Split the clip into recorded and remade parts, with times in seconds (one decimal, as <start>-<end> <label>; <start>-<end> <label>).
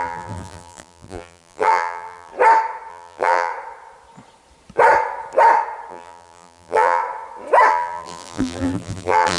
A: 0.0-2.3 remade; 2.3-2.9 recorded; 2.9-3.5 remade; 3.5-5.9 recorded; 5.9-7.0 remade; 7.0-7.7 recorded; 7.7-9.4 remade